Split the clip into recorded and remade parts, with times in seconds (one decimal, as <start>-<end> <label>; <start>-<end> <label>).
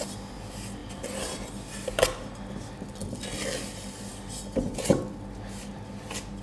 0.0-6.4 recorded